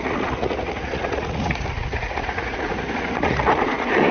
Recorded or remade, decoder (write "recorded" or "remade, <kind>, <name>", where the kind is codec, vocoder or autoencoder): remade, vocoder, Vocos